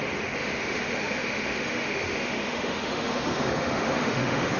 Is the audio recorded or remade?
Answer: remade